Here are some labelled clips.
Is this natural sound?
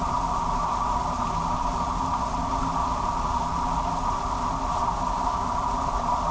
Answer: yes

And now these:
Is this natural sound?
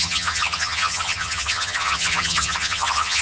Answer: no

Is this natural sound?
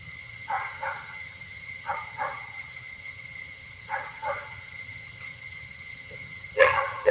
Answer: no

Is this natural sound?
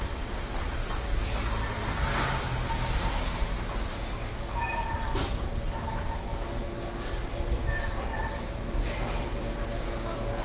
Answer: yes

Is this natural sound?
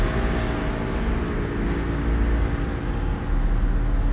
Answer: yes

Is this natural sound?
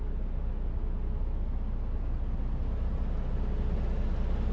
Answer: yes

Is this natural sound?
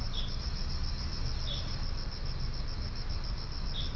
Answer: yes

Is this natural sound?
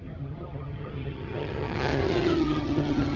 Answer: no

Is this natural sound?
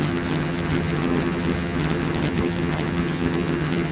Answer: no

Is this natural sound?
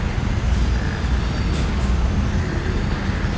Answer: yes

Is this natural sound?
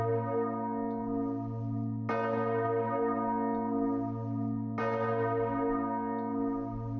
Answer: yes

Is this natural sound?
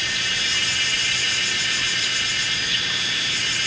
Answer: yes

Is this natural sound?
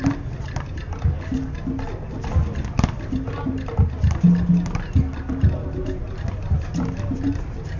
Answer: yes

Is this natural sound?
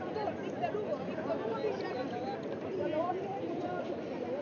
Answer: yes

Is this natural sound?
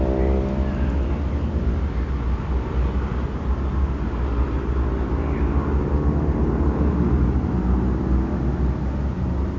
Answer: yes